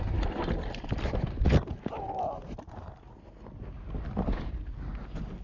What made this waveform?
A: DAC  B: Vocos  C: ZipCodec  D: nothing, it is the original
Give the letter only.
D